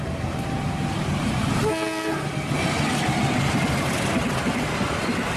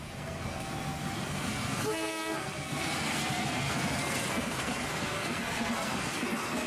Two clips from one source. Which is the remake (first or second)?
second